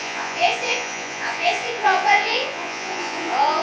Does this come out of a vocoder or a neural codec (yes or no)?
yes